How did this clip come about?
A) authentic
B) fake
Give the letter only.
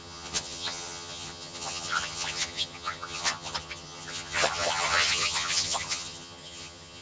B